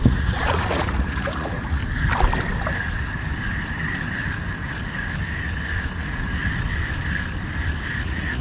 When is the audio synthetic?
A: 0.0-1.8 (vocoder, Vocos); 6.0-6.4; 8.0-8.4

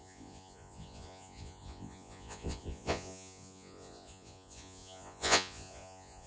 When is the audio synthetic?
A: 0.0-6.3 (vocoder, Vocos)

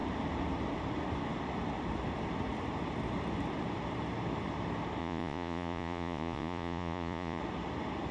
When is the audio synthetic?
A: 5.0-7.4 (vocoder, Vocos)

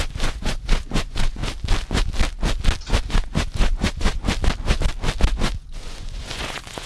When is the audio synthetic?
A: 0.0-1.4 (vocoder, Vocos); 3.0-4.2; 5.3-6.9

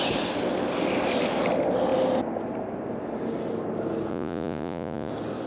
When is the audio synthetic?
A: 4.1-5.1 (vocoder, Vocos)

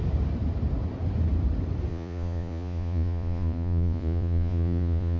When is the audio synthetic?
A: 1.9-5.2 (vocoder, Vocos)